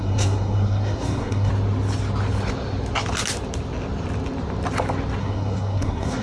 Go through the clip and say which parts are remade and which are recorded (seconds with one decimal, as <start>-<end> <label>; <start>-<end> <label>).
0.0-1.5 remade; 1.5-5.2 recorded; 5.2-6.2 remade